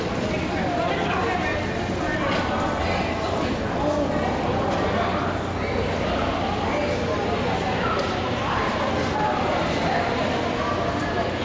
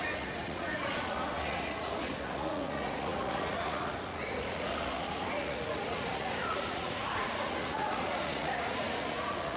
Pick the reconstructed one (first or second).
second